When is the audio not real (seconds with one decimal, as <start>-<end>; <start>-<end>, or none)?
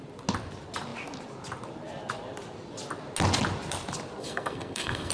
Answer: 4.2-5.1